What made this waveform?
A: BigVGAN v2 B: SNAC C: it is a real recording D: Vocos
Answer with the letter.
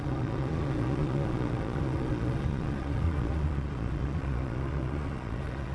D